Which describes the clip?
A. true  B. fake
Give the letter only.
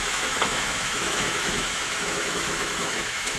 B